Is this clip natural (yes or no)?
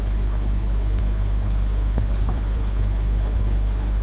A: no